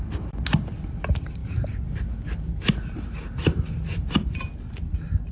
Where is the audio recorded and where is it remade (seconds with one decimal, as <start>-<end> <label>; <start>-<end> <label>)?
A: 0.0-5.3 recorded